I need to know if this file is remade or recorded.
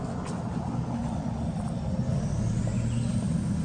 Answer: recorded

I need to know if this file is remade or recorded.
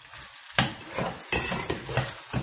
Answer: recorded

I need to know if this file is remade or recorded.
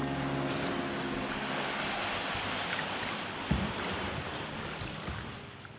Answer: recorded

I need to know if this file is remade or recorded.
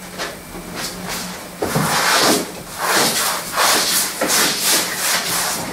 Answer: recorded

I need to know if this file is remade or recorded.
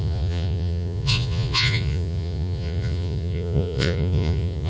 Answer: remade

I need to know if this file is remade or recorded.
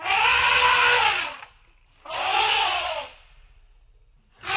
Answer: recorded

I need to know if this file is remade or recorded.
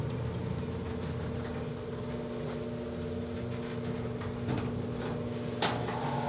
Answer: recorded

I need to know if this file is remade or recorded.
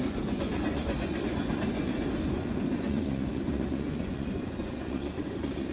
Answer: remade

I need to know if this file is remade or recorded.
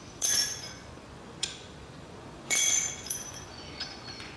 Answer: remade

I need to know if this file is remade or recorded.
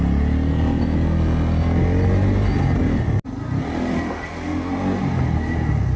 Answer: recorded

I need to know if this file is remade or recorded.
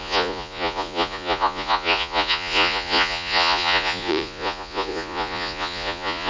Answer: remade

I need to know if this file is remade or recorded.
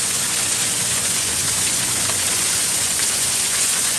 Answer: remade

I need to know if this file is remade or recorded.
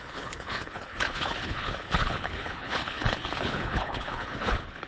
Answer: remade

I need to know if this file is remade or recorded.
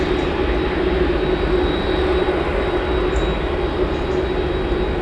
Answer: recorded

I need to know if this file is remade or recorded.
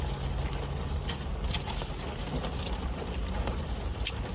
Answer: recorded